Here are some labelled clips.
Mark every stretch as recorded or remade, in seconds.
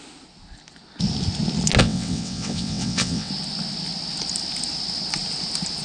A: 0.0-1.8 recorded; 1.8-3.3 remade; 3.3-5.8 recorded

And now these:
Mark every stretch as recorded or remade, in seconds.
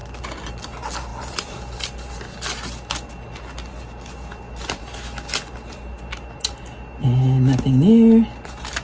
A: 0.0-1.1 recorded; 1.1-1.8 remade; 1.8-8.8 recorded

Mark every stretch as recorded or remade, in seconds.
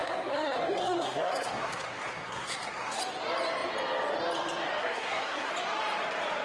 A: 0.0-3.0 remade; 3.0-4.8 recorded; 4.8-5.5 remade; 5.5-6.4 recorded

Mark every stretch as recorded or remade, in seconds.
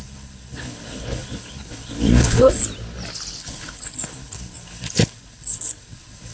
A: 0.0-2.6 remade; 2.6-3.4 recorded; 3.4-6.3 remade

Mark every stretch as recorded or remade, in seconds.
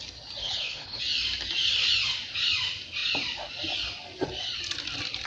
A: 0.0-0.4 recorded; 0.4-1.0 remade; 1.0-5.3 recorded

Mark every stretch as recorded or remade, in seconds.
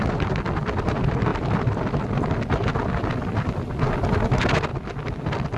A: 0.0-5.6 recorded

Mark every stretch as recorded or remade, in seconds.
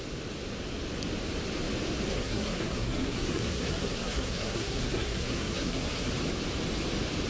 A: 0.0-2.1 recorded; 2.1-6.1 remade; 6.1-7.3 recorded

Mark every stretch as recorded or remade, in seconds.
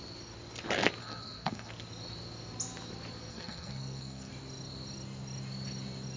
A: 0.0-1.0 recorded; 1.0-1.7 remade; 1.7-3.3 recorded; 3.3-4.3 remade; 4.3-6.2 recorded